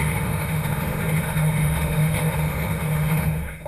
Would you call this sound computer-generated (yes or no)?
yes